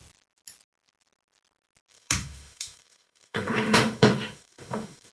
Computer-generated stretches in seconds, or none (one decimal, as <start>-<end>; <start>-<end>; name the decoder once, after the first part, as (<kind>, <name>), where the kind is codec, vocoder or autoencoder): 1.9-5.1 (autoencoder, DAC-VAE)